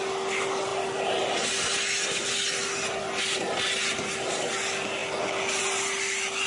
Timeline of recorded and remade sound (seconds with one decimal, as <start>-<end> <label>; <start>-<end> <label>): 0.0-6.5 recorded